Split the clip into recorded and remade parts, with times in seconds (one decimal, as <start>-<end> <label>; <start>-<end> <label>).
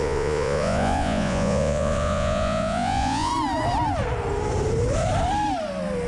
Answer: 0.0-3.3 remade; 3.3-6.1 recorded